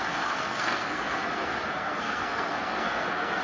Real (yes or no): no